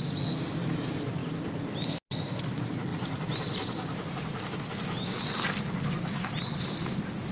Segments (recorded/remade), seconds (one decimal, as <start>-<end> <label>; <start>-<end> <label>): 0.0-7.3 recorded